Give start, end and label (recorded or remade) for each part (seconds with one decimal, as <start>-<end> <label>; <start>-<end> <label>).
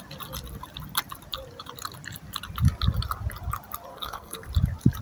0.0-3.9 recorded; 3.9-4.5 remade; 4.5-5.0 recorded